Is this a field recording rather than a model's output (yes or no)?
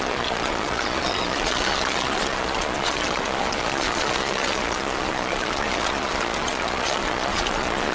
no